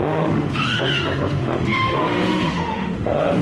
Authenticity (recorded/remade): remade